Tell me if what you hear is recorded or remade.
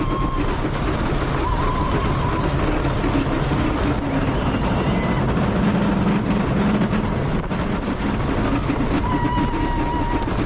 recorded